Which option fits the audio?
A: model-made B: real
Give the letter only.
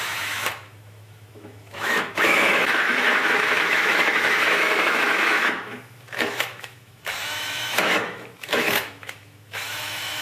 A